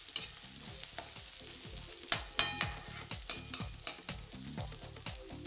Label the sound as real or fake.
real